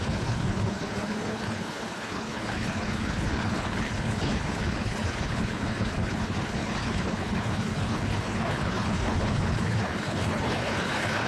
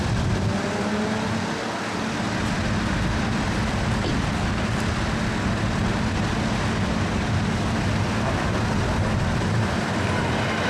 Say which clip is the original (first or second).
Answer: second